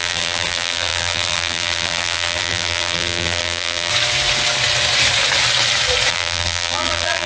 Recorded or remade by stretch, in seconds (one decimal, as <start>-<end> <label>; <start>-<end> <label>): 0.0-3.9 remade; 3.9-6.1 recorded; 6.1-7.3 remade